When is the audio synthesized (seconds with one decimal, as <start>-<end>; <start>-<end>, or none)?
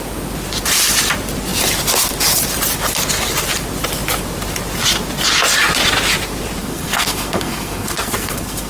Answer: 6.6-8.7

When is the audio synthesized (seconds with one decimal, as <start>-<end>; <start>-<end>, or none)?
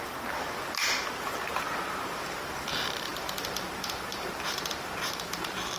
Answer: 0.0-5.8